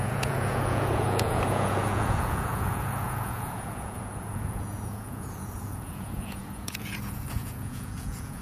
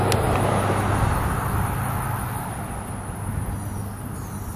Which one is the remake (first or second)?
first